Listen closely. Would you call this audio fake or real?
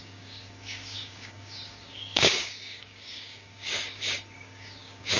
fake